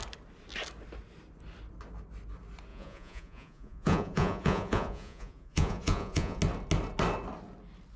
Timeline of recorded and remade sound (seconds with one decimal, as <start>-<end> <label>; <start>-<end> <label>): 0.0-2.7 recorded; 2.7-6.4 remade; 6.4-8.0 recorded